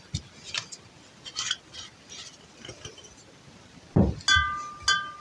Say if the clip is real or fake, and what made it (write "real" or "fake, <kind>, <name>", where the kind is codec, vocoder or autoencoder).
real